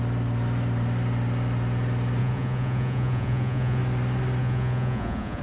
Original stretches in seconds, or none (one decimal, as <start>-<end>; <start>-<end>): 0.0-2.2; 3.8-4.4